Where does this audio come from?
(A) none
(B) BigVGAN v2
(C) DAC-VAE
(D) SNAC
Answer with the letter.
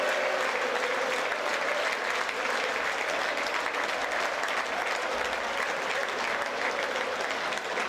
A